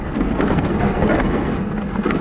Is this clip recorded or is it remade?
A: remade